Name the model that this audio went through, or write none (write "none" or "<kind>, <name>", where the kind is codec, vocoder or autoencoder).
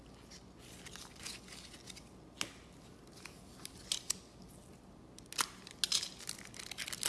none